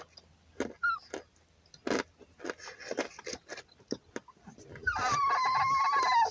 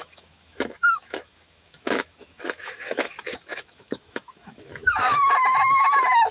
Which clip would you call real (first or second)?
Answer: first